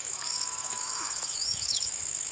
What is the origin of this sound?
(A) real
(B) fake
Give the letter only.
B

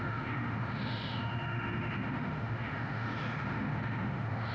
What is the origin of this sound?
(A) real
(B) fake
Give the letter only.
B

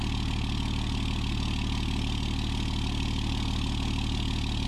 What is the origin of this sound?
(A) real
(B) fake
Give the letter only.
A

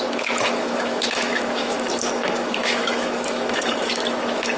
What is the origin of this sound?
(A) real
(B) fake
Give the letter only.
B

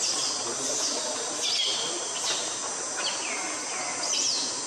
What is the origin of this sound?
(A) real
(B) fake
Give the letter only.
A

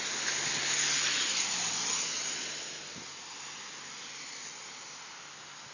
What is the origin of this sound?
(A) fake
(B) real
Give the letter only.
B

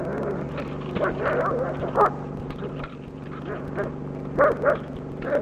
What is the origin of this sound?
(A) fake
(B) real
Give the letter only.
B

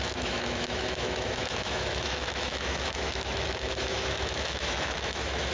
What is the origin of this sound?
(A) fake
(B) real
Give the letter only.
A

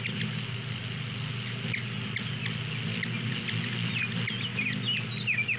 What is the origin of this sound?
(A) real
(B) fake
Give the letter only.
A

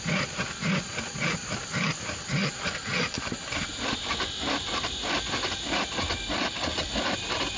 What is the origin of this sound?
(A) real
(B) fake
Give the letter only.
A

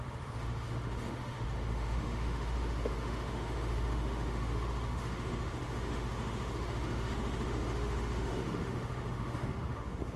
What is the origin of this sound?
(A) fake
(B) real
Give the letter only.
A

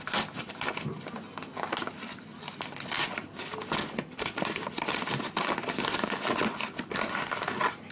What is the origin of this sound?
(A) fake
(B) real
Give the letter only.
B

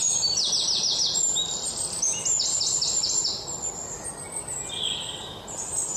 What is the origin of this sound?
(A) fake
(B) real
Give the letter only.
B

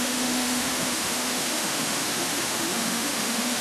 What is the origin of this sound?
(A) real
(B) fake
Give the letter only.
B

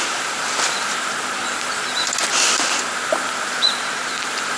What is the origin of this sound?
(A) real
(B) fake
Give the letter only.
A